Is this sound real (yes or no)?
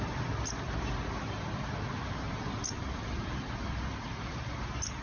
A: yes